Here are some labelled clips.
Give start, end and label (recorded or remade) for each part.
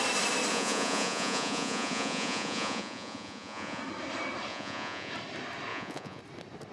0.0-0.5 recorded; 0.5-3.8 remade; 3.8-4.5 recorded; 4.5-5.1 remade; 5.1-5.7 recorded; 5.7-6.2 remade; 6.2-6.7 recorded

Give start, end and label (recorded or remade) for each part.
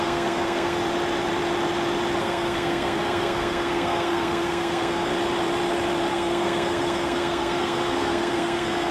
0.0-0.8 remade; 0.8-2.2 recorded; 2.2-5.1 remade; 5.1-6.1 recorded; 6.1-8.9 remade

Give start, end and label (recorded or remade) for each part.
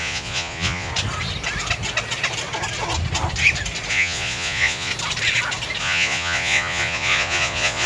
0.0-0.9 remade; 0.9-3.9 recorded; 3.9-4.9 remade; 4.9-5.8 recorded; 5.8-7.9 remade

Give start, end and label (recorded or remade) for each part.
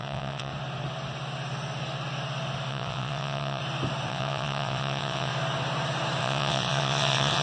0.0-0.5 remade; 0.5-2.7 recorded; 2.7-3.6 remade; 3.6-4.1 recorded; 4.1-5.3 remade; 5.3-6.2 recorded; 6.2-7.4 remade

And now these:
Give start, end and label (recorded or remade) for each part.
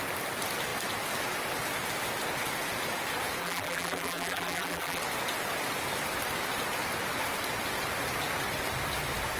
0.0-3.4 recorded; 3.4-5.0 remade; 5.0-9.4 recorded